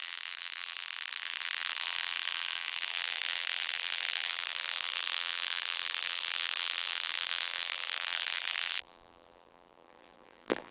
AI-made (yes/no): yes